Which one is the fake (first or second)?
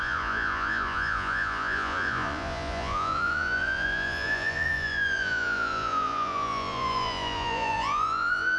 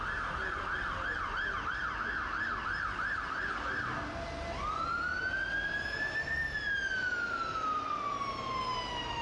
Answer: first